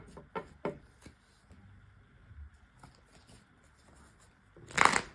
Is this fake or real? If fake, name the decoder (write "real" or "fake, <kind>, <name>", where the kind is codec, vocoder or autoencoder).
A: real